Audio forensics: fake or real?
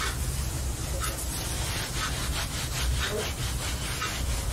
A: real